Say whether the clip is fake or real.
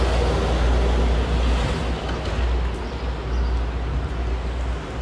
real